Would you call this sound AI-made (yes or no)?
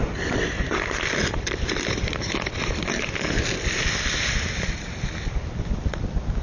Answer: no